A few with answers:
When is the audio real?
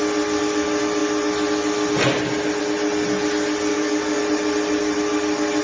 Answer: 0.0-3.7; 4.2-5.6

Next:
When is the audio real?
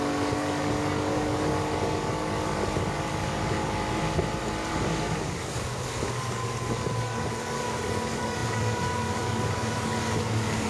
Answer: 4.0-4.7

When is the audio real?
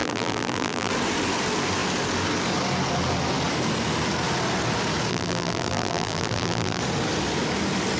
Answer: 0.9-5.1; 6.8-8.0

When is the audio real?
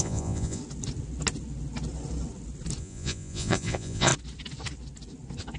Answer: 0.6-2.8; 4.1-5.6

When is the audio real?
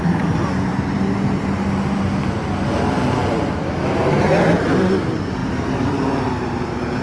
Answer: 0.7-4.9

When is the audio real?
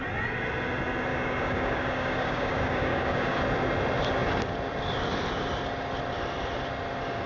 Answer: 0.0-1.1; 3.4-7.3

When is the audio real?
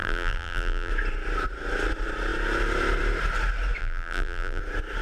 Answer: 0.9-3.8; 4.6-5.0